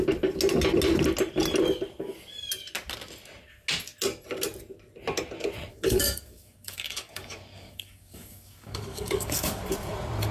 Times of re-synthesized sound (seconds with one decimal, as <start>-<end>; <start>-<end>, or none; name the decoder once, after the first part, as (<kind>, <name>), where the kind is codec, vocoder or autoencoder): 5.7-9.6 (codec, DAC)